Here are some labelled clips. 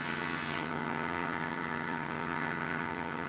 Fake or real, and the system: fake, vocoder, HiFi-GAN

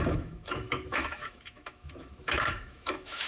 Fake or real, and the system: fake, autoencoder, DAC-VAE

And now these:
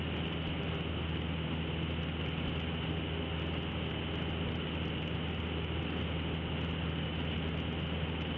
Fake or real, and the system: real